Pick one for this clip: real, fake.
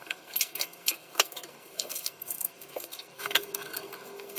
fake